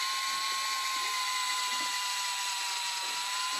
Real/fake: real